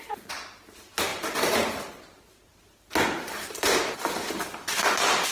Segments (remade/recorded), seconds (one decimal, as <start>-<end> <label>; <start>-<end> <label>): 0.0-5.3 recorded